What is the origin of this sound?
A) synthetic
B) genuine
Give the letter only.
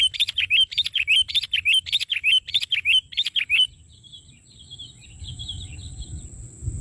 B